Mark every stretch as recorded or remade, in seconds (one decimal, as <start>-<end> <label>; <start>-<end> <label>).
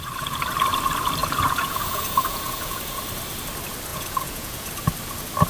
0.0-1.2 recorded; 1.2-2.8 remade; 2.8-3.9 recorded; 3.9-4.7 remade; 4.7-5.5 recorded